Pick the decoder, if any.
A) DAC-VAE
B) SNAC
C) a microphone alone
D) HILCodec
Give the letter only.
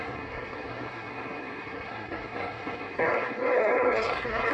B